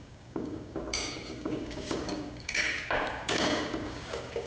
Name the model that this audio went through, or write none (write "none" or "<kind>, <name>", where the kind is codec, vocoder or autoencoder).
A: codec, DAC